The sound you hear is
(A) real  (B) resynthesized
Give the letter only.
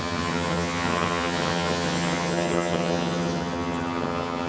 B